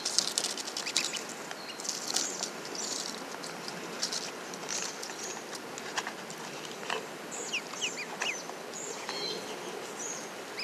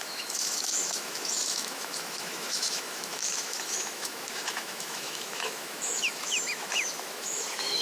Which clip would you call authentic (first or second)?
first